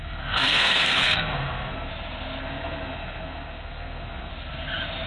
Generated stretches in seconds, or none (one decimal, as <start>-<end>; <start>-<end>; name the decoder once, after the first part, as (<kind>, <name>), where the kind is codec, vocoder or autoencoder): 0.0-1.9 (codec, SNAC); 2.4-4.3